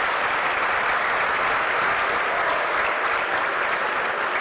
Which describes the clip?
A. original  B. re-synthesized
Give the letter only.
A